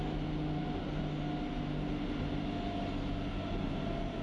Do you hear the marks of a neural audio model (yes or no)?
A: no